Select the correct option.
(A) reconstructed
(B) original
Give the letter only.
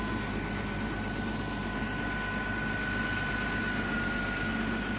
B